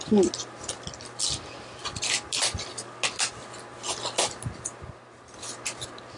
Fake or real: real